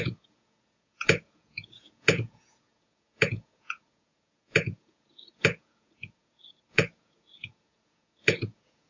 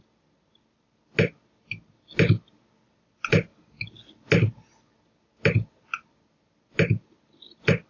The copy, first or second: first